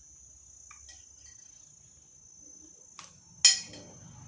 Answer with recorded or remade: recorded